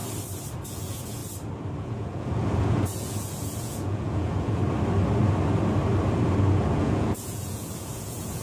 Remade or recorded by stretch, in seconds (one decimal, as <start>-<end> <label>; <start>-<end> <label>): 0.0-0.7 recorded; 0.7-1.2 remade; 1.2-1.8 recorded; 1.8-4.6 remade; 4.6-6.8 recorded; 6.8-8.4 remade